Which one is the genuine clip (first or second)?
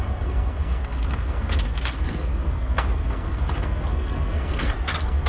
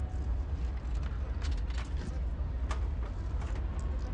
second